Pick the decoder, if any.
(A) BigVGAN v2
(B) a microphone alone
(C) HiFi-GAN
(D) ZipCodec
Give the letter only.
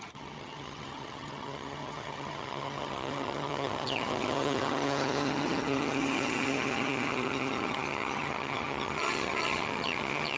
C